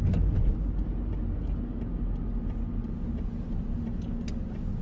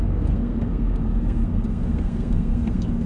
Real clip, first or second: first